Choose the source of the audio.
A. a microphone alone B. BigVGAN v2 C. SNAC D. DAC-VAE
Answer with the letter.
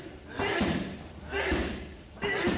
A